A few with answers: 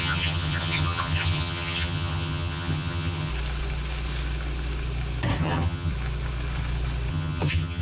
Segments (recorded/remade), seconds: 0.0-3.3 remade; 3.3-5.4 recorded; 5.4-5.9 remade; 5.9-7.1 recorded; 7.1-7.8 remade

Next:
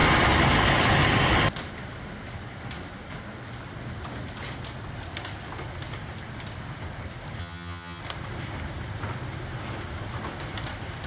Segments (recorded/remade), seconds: 0.0-7.4 recorded; 7.4-8.0 remade; 8.0-11.1 recorded

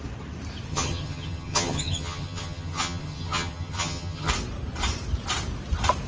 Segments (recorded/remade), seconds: 0.0-0.7 recorded; 0.7-4.3 remade; 4.3-6.1 recorded

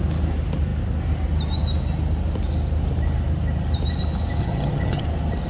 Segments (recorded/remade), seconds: 0.0-4.4 recorded; 4.4-5.0 remade; 5.0-5.5 recorded

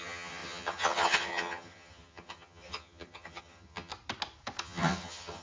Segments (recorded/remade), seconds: 0.0-3.9 remade; 3.9-4.6 recorded; 4.6-5.4 remade

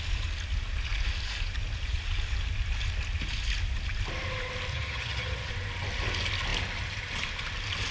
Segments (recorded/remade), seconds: 0.0-4.7 recorded; 4.7-5.5 remade; 5.5-7.9 recorded

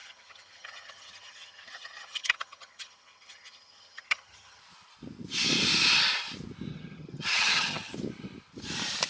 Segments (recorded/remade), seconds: 0.0-4.6 remade; 4.6-6.7 recorded; 6.7-7.9 remade; 7.9-9.1 recorded